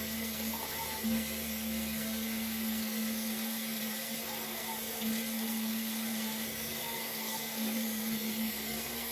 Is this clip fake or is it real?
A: fake